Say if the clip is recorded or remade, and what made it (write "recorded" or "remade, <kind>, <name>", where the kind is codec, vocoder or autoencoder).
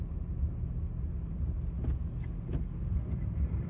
recorded